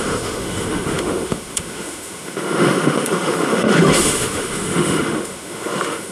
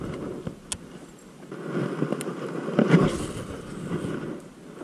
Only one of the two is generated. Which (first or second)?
first